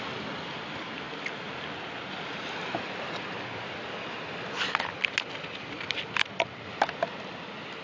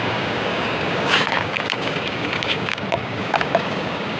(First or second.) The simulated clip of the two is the second